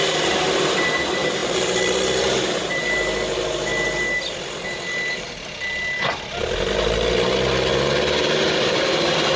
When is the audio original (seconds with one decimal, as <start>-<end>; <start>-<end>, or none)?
0.0-9.4

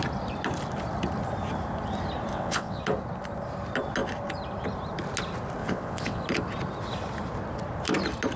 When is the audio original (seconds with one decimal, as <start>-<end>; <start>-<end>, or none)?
0.0-2.3; 2.8-5.6; 6.2-8.4

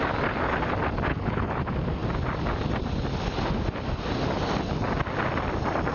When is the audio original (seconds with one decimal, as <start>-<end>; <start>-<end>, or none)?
0.0-1.1; 1.6-5.9

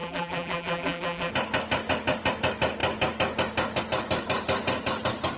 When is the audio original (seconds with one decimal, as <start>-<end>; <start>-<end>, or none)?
1.3-5.4

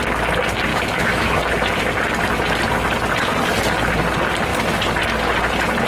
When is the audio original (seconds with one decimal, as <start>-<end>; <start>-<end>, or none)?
0.0-0.7; 1.4-5.9

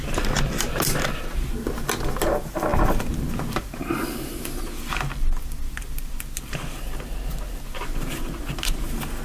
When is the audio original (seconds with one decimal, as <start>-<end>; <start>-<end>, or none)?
0.0-9.2

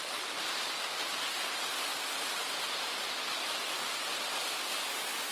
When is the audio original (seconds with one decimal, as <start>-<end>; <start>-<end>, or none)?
0.0-1.9; 3.8-5.3

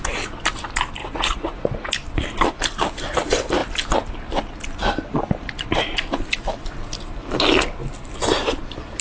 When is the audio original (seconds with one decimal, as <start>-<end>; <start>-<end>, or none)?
0.0-1.0; 1.9-9.0